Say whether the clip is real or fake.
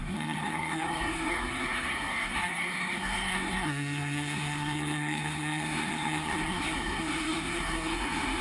fake